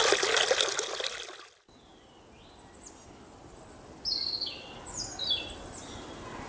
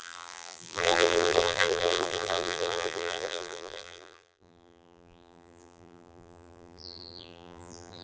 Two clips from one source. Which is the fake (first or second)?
second